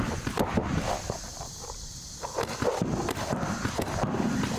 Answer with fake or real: fake